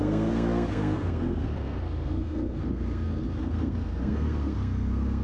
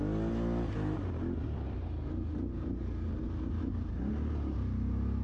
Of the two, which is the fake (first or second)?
first